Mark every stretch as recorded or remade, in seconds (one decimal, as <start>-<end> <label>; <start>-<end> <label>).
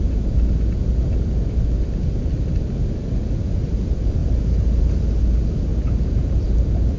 0.0-5.7 recorded; 5.7-7.0 remade